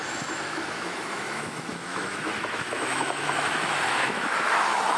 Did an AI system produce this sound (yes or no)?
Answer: yes